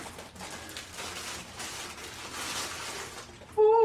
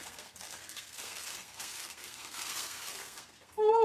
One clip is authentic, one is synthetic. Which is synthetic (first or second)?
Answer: second